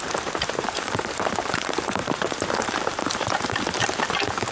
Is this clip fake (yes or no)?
yes